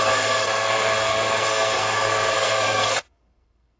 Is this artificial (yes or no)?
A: yes